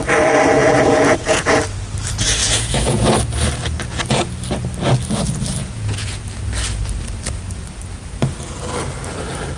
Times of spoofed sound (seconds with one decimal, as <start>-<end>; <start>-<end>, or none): 0.6-1.6; 2.4-3.2; 5.6-6.2